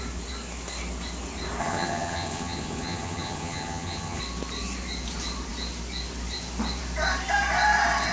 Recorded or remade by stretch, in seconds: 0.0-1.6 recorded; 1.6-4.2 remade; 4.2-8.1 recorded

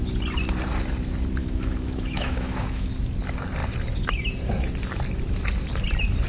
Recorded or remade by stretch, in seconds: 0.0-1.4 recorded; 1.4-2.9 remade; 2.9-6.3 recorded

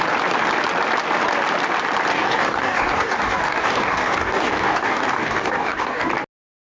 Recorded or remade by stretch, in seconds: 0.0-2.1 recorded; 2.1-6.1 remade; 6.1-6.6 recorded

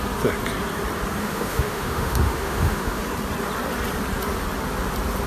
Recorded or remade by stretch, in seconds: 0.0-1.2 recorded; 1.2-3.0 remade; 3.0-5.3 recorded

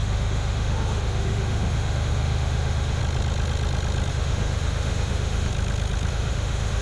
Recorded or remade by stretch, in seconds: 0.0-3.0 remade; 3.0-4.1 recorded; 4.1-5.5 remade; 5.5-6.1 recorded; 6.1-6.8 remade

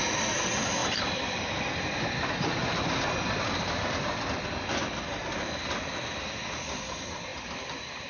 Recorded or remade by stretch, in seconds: 0.0-7.3 recorded; 7.3-8.1 remade